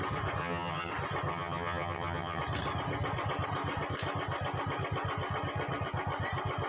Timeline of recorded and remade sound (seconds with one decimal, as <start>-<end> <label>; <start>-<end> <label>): 0.0-0.4 recorded; 0.4-0.9 remade; 0.9-1.3 recorded; 1.3-2.4 remade; 2.4-6.7 recorded

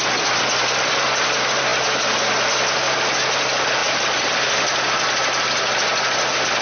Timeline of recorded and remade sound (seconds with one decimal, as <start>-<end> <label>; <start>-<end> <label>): 0.0-6.6 recorded

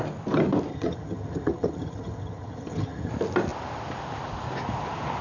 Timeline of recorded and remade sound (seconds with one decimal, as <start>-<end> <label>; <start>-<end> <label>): 0.0-0.7 recorded; 0.7-3.1 remade; 3.1-5.2 recorded

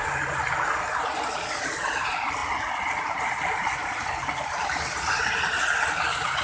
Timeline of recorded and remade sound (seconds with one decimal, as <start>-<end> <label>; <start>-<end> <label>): 0.0-6.4 recorded

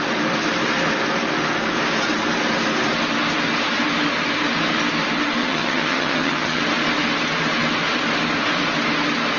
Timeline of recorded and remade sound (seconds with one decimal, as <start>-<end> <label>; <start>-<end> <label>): 0.0-5.4 recorded; 5.4-6.6 remade; 6.6-9.4 recorded